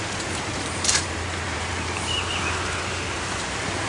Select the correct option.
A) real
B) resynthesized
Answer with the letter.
B